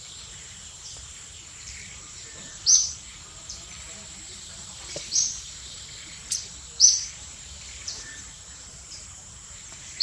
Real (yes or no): no